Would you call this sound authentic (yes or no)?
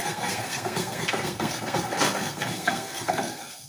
no